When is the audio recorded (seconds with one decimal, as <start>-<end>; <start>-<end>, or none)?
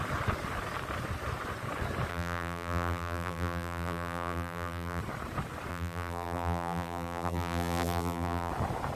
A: 0.0-2.1; 5.0-5.7; 8.5-9.0